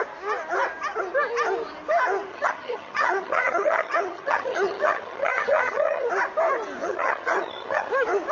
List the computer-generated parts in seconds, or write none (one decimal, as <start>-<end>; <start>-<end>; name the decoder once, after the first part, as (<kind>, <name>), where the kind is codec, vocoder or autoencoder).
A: 2.3-6.1 (vocoder, HiFi-GAN); 6.8-7.9